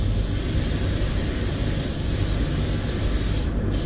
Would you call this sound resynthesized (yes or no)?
no